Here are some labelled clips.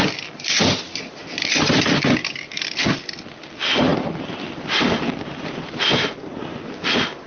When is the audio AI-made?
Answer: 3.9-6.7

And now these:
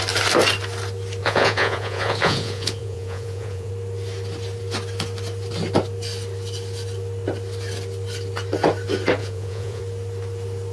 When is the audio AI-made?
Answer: 1.2-3.7; 9.2-9.8

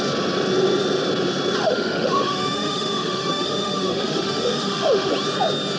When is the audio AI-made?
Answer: 1.6-5.1

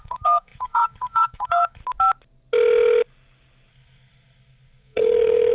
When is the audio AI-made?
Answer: 0.0-1.8; 3.7-5.5

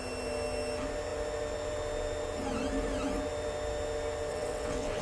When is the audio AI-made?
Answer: 4.3-5.0

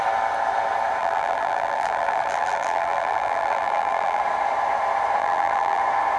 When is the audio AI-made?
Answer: 1.0-4.2; 5.2-5.8